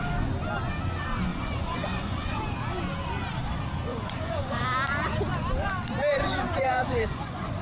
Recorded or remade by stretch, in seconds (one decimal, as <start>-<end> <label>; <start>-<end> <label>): 0.0-1.3 recorded; 1.3-2.4 remade; 2.4-3.9 recorded; 3.9-4.6 remade; 4.6-6.1 recorded; 6.1-7.6 remade